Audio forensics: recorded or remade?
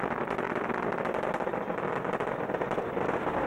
recorded